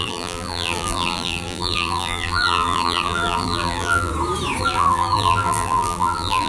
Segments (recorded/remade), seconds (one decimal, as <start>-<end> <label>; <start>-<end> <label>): 0.0-4.1 remade; 4.1-4.6 recorded; 4.6-6.5 remade